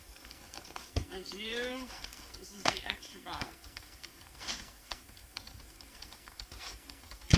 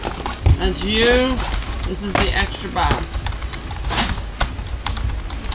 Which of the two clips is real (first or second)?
second